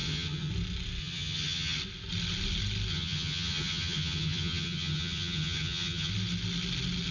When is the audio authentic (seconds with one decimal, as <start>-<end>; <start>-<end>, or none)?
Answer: 0.5-1.0; 1.8-2.9; 6.1-7.1